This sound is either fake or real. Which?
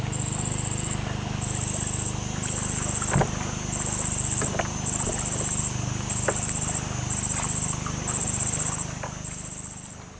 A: real